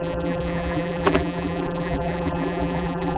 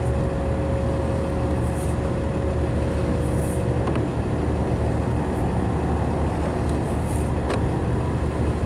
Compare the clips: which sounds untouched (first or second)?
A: second